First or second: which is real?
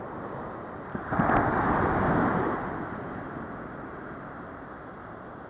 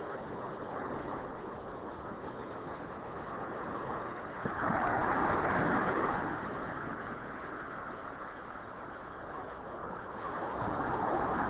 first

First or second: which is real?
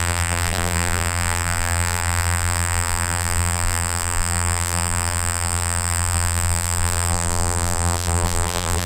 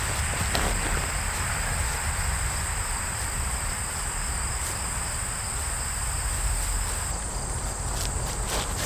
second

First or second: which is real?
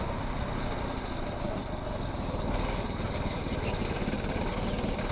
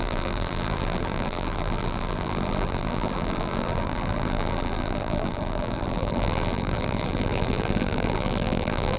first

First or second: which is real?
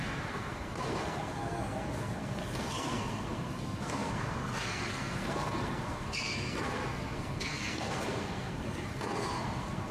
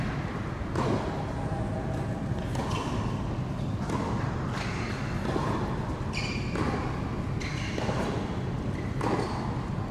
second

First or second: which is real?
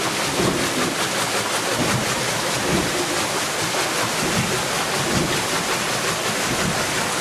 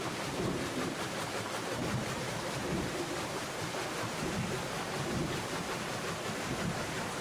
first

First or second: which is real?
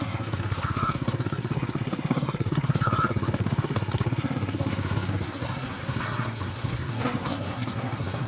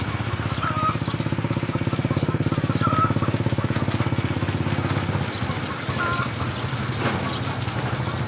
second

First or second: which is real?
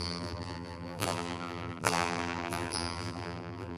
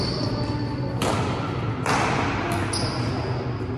second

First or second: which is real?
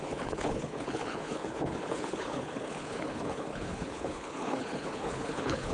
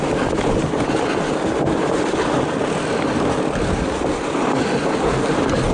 second